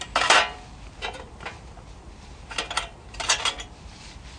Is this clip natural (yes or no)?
yes